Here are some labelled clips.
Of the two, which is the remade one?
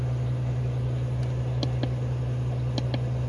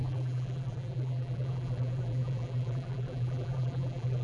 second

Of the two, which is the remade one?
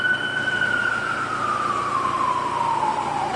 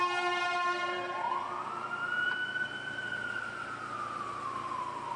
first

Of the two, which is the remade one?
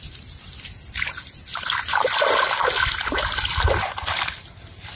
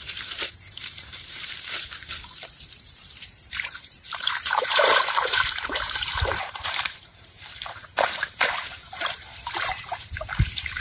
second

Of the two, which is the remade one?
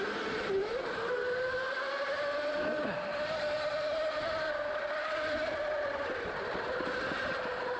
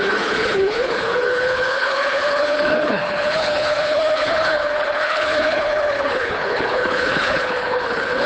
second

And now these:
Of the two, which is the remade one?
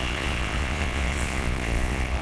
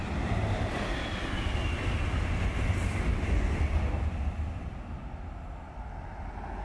first